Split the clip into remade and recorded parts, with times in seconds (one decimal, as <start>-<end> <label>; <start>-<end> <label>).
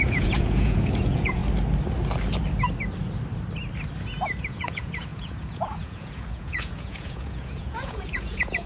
0.0-1.4 remade; 1.4-4.4 recorded; 4.4-8.7 remade